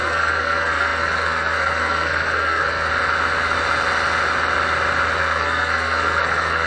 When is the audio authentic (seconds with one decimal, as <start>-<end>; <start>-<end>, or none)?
2.9-5.2